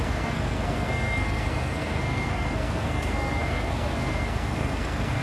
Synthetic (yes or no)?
yes